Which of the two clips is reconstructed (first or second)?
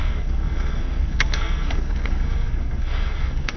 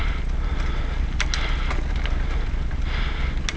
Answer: first